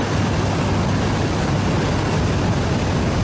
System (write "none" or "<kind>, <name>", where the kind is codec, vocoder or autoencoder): none